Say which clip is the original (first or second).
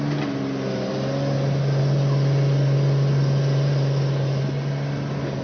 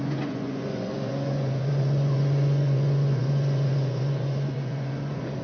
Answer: first